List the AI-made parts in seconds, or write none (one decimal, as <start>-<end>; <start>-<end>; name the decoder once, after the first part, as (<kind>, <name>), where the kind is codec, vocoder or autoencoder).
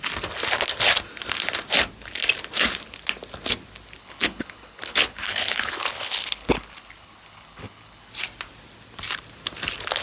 4.0-8.1 (codec, HILCodec)